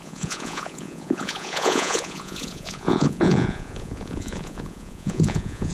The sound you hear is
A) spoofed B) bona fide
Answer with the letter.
A